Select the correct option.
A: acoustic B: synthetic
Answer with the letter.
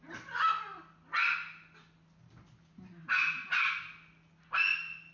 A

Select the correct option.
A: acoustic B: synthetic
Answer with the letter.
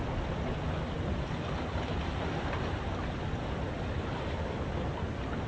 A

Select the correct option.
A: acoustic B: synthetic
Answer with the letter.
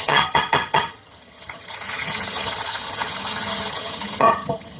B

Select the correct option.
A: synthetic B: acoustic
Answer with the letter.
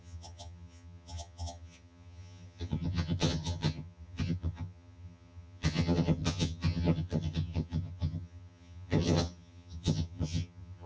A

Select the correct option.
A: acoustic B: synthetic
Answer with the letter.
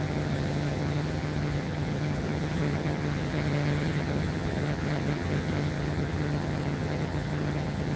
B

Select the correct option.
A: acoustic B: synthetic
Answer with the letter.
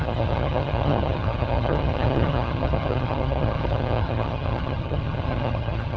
B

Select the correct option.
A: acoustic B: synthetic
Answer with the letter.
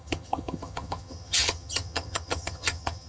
B